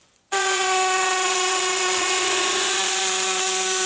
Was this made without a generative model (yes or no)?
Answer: no